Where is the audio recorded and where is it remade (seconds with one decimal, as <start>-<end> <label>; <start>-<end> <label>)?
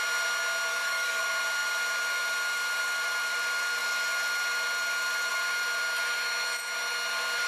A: 0.0-0.7 recorded; 0.7-1.2 remade; 1.2-7.5 recorded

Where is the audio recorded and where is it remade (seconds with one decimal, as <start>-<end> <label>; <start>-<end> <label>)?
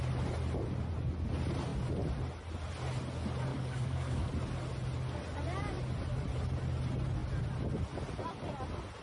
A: 0.0-3.5 recorded; 3.5-4.3 remade; 4.3-9.0 recorded